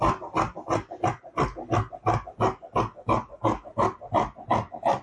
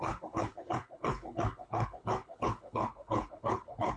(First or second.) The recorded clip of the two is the first